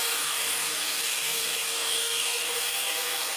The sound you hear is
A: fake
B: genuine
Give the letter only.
A